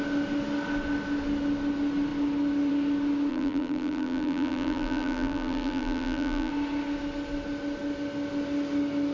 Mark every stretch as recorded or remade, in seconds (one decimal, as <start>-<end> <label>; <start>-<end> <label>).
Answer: 0.0-3.3 recorded; 3.3-6.5 remade; 6.5-9.1 recorded